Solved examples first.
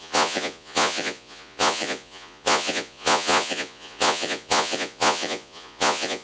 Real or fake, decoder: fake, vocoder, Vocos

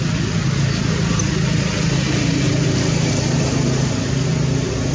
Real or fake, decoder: real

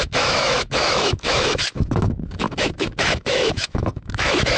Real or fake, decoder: fake, autoencoder, DAC-VAE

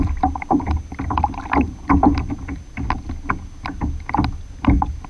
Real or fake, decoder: real